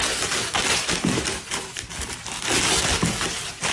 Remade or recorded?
recorded